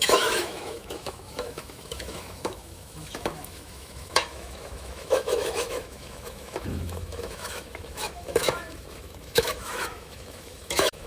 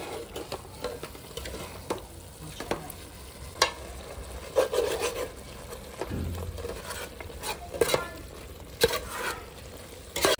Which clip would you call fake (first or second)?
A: first